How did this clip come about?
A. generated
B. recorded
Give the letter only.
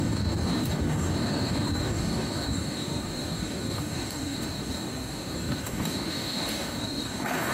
A